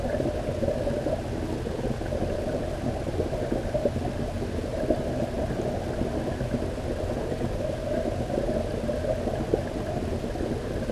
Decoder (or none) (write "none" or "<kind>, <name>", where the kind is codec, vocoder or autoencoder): none